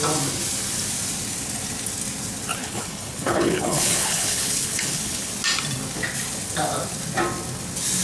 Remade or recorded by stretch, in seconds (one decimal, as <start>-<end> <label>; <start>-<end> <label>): 0.0-2.6 recorded; 2.6-5.3 remade; 5.3-8.0 recorded

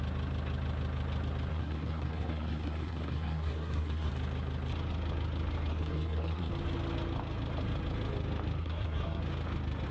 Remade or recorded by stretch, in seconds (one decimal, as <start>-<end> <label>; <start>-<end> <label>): 0.0-1.5 recorded; 1.5-4.1 remade; 4.1-5.7 recorded; 5.7-6.5 remade; 6.5-8.6 recorded; 8.6-9.2 remade; 9.2-9.9 recorded

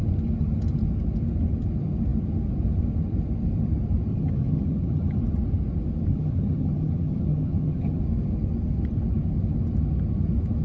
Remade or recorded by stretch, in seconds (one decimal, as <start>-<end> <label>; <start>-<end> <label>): 0.0-4.1 recorded; 4.1-5.2 remade; 5.2-6.1 recorded; 6.1-8.0 remade; 8.0-10.6 recorded

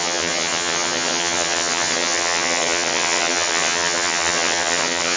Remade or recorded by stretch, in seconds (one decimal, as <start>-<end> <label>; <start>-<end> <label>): 0.0-5.2 remade

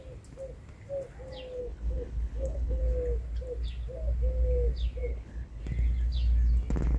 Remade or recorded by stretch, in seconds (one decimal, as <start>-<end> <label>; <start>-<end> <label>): 0.0-1.6 recorded; 1.6-2.8 remade; 2.8-5.1 recorded; 5.1-5.6 remade; 5.6-7.0 recorded

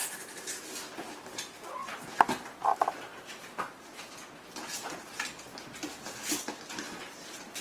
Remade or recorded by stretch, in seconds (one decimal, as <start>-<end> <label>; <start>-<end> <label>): 0.0-0.6 remade; 0.6-3.1 recorded; 3.1-4.0 remade; 4.0-7.6 recorded

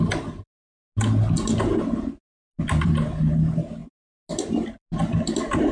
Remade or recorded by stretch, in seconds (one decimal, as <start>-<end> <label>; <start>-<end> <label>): 0.0-5.7 recorded